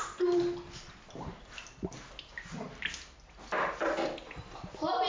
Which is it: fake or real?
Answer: real